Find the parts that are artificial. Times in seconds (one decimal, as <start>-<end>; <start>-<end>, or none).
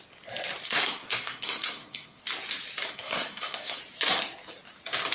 0.6-2.2; 2.9-3.8